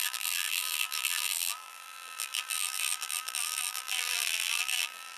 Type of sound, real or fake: fake